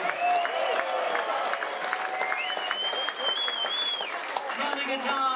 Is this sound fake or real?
real